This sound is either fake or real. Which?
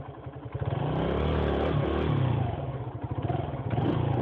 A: real